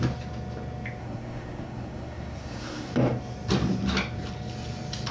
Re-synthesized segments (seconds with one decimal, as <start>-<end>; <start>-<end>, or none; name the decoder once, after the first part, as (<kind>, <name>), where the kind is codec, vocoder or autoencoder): 1.0-2.9 (codec, SNAC)